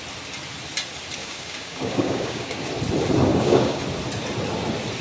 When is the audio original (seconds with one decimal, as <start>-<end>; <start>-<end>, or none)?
0.0-1.2; 2.7-3.3; 3.8-5.0

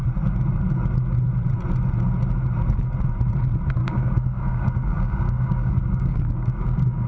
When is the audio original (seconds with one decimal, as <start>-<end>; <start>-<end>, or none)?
0.0-3.8